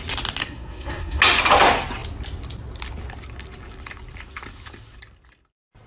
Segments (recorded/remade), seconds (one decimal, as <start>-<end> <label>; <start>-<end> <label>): 0.0-0.4 recorded; 0.4-1.2 remade; 1.2-5.9 recorded

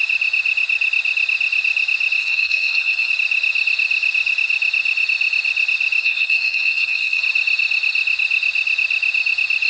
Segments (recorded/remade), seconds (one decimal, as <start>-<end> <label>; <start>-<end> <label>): 0.0-2.2 recorded; 2.2-3.1 remade; 3.1-6.0 recorded; 6.0-7.2 remade; 7.2-9.7 recorded

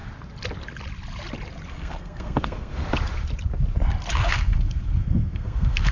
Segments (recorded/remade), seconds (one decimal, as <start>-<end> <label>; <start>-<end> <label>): 0.0-1.7 recorded; 1.7-2.8 remade; 2.8-4.1 recorded; 4.1-5.9 remade

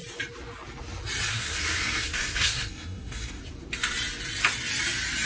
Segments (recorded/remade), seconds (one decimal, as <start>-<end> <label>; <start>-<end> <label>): 0.0-1.3 recorded; 1.3-3.4 remade; 3.4-5.3 recorded

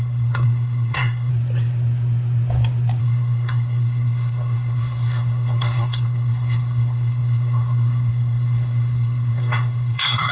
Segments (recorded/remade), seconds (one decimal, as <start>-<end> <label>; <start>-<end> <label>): 0.0-1.3 remade; 1.3-3.0 recorded; 3.0-10.3 remade

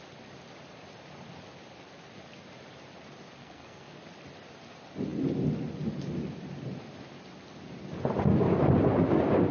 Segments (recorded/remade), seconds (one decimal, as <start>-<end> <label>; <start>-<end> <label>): 0.0-3.4 recorded; 3.4-4.0 remade; 4.0-9.5 recorded

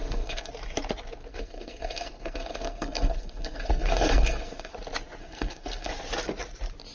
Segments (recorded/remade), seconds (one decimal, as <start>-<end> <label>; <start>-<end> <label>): 0.0-0.5 remade; 0.5-1.3 recorded; 1.3-4.7 remade; 4.7-5.2 recorded; 5.2-5.9 remade; 5.9-6.9 recorded